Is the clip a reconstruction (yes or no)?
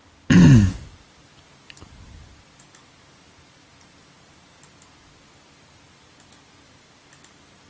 no